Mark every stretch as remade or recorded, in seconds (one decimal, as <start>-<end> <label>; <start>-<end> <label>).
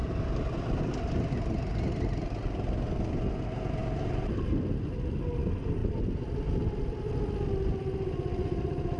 0.0-0.8 remade; 0.8-3.8 recorded; 3.8-4.5 remade; 4.5-5.8 recorded; 5.8-7.1 remade; 7.1-9.0 recorded